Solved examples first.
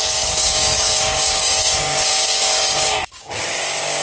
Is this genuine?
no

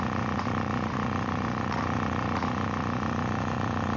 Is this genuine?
no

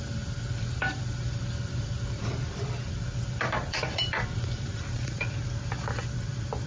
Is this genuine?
no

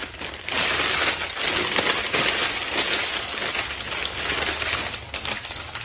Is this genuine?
yes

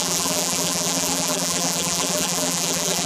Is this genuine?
no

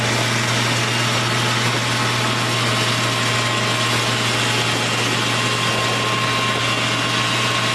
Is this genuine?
yes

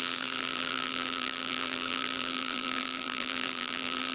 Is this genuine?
no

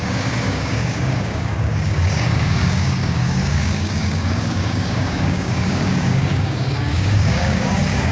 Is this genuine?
no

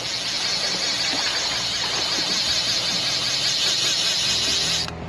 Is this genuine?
yes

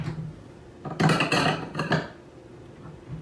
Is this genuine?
yes